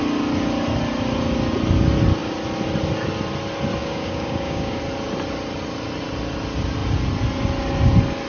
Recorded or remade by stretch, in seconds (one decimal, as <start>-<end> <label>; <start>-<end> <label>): 0.0-3.8 recorded; 3.8-4.8 remade; 4.8-8.3 recorded